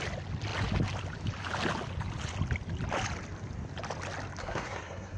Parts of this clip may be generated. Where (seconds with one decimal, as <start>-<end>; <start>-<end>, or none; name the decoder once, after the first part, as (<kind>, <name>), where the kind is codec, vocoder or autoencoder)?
4.4-5.2 (codec, SNAC)